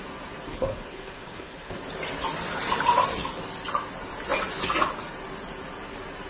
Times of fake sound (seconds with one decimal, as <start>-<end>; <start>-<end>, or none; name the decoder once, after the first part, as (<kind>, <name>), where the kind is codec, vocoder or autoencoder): 0.5-1.8 (codec, HILCodec)